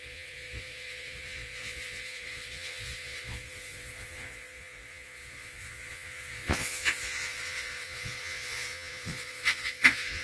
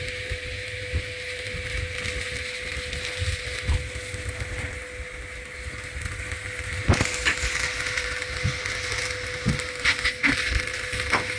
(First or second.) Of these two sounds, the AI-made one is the first